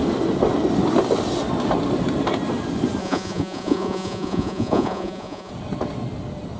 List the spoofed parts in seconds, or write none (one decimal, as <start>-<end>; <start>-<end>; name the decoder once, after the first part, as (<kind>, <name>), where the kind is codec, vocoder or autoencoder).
3.0-5.5 (vocoder, Vocos)